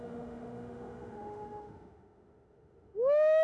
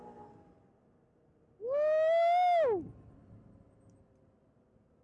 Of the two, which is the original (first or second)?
second